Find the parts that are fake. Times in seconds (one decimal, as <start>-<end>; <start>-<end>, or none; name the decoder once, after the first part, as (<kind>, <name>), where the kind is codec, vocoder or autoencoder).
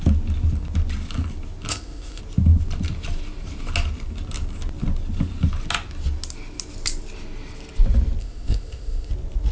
1.7-2.2 (codec, ZipCodec); 8.2-9.1